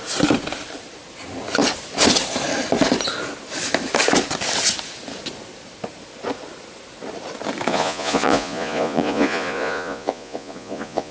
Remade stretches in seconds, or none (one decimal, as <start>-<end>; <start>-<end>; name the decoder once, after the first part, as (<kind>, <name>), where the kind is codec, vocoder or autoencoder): 7.7-11.1 (vocoder, Vocos)